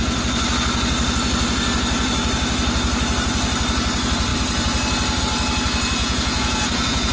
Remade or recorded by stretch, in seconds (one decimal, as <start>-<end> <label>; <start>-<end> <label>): 0.0-6.0 recorded; 6.0-7.1 remade